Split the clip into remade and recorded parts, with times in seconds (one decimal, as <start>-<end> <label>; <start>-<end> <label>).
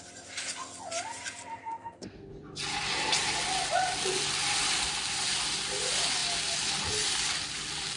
0.0-1.6 recorded; 1.6-2.3 remade; 2.3-8.0 recorded